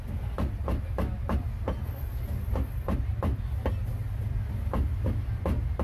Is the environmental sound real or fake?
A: real